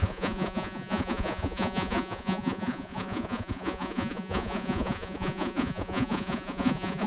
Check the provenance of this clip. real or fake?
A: fake